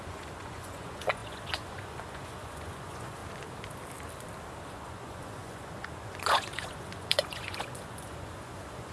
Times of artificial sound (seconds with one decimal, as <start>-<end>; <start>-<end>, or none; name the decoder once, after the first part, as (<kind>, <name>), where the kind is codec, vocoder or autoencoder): 0.0-3.2 (vocoder, Vocos); 4.7-8.9